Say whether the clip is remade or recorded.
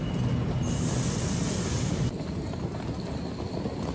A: recorded